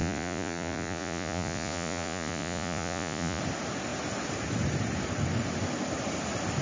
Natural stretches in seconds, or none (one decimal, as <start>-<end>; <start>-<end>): 3.4-6.6